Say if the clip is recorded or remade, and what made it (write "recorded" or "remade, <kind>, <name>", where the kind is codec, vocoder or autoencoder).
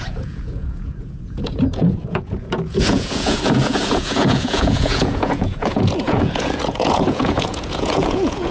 remade, vocoder, Vocos